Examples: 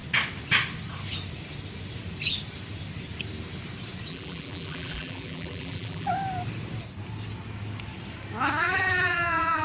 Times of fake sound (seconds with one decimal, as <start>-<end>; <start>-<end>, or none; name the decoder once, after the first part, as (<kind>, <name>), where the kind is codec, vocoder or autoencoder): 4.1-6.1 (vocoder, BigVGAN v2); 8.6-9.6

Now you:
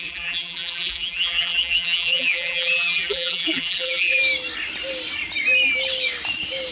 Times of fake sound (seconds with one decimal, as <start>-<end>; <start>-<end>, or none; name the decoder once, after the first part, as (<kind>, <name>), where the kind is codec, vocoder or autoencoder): 0.0-4.2 (vocoder, BigVGAN v2)

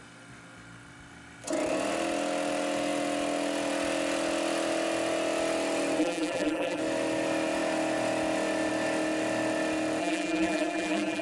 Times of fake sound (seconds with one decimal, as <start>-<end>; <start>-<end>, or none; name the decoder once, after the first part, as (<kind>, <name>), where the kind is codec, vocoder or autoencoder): 6.0-6.8 (vocoder, BigVGAN v2); 10.0-11.2

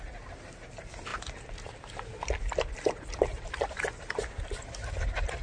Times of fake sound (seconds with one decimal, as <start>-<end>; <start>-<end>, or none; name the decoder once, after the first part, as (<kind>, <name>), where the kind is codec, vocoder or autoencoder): 1.1-3.7 (vocoder, BigVGAN v2)

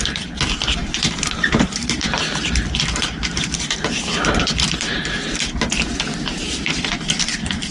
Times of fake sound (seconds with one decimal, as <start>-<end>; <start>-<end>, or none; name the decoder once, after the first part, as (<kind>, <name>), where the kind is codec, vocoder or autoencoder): 0.8-5.4 (vocoder, BigVGAN v2); 6.1-6.8

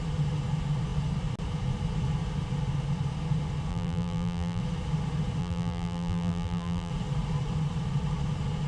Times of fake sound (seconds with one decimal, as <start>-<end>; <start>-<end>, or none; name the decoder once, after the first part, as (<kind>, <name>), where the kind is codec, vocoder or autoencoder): 3.7-4.6 (vocoder, BigVGAN v2); 5.4-6.9

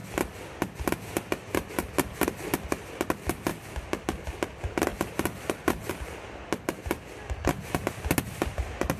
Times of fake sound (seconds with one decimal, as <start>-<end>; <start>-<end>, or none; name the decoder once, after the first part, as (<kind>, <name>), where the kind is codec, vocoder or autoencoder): 0.0-1.7 (vocoder, BigVGAN v2); 4.9-5.9

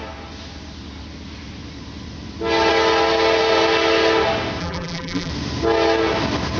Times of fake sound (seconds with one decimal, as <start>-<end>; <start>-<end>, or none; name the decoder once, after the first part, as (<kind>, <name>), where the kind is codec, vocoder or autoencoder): 4.6-5.3 (vocoder, BigVGAN v2)